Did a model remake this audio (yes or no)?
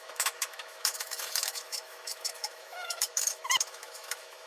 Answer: yes